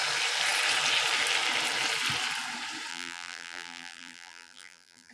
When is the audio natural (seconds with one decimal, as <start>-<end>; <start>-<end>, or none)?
0.0-2.9

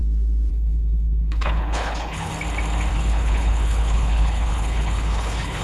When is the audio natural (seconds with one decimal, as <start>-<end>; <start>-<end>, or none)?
0.0-0.5; 2.3-2.9

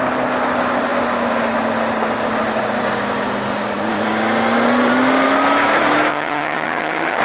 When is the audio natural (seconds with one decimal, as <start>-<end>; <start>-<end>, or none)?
0.0-6.1

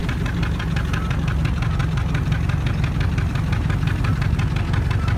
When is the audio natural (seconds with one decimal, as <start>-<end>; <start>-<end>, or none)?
0.0-5.2

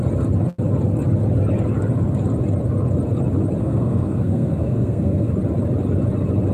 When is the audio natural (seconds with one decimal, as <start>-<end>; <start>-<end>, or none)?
0.0-3.6; 5.3-6.5

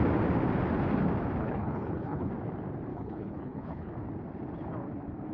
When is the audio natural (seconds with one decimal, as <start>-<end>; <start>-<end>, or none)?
0.0-1.4; 2.3-2.9; 3.9-5.3